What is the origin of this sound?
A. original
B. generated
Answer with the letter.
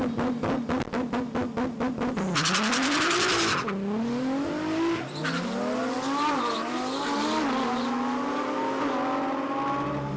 A